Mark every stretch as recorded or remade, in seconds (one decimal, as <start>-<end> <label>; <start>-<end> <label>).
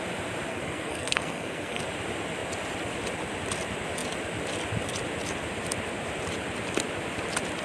0.0-0.5 recorded; 0.5-1.8 remade; 1.8-7.6 recorded